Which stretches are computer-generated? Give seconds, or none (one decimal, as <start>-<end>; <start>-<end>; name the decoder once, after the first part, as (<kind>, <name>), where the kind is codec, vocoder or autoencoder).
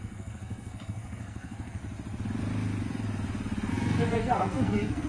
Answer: 0.0-1.8 (codec, SNAC); 3.7-5.1